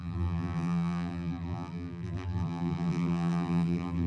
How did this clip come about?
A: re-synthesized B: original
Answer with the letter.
A